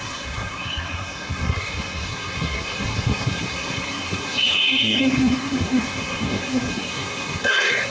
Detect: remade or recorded remade